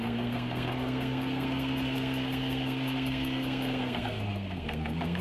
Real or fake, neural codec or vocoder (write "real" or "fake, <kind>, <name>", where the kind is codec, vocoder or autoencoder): fake, codec, SNAC